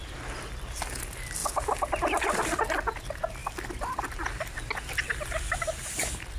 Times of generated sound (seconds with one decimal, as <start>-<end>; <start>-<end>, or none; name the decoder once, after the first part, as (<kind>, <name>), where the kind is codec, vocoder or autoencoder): none